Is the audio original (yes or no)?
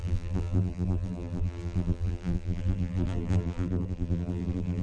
no